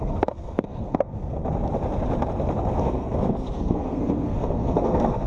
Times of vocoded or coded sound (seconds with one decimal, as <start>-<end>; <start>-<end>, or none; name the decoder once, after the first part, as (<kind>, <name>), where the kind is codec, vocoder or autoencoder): 0.0-1.4 (codec, SNAC); 2.8-5.3